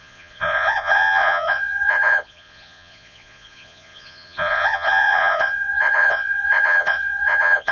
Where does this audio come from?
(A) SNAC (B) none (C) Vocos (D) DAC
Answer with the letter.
C